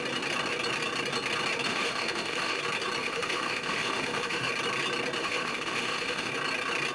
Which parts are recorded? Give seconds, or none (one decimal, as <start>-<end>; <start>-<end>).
0.0-1.7; 2.6-3.0; 4.5-5.2; 6.3-6.9